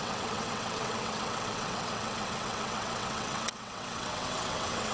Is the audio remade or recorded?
remade